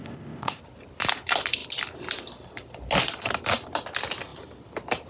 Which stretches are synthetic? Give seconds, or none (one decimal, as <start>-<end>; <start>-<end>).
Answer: 0.0-0.6